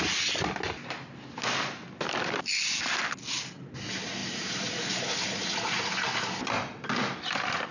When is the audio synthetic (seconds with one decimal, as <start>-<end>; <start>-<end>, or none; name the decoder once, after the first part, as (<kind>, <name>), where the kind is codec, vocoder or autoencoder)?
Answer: 4.2-5.0 (vocoder, BigVGAN v2)